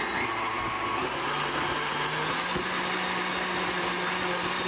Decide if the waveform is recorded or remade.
recorded